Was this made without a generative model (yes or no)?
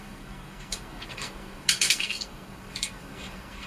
no